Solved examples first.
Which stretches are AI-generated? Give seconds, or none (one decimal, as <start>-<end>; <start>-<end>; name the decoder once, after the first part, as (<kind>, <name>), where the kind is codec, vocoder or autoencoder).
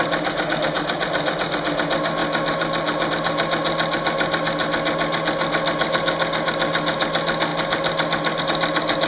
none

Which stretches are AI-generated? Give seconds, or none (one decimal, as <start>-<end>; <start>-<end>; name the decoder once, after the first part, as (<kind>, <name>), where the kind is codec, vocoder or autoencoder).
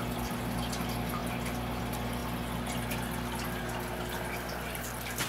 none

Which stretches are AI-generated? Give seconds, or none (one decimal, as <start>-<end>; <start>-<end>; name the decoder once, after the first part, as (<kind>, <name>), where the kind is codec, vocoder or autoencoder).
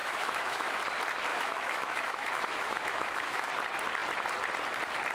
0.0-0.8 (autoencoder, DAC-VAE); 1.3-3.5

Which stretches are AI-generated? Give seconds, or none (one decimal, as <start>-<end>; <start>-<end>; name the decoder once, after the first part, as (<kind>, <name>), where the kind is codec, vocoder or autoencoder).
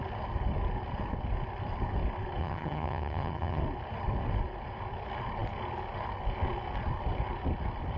2.4-3.6 (vocoder, HiFi-GAN)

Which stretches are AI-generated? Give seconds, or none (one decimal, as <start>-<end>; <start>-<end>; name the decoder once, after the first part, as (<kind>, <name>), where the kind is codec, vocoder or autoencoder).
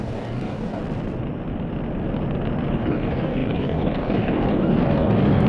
0.0-0.8 (codec, DAC); 2.7-5.5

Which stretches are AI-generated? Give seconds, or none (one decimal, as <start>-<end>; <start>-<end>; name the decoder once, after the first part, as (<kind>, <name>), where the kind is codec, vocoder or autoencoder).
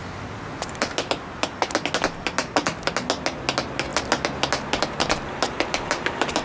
none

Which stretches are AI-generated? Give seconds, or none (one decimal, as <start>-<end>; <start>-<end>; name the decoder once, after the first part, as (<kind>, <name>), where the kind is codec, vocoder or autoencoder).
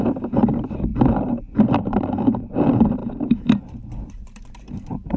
0.0-3.0 (vocoder, BigVGAN v2); 3.6-5.2